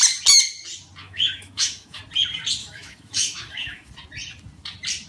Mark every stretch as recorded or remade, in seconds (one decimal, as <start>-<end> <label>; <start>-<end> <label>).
0.0-1.0 recorded; 1.0-2.0 remade; 2.0-2.6 recorded; 2.6-3.9 remade; 3.9-5.1 recorded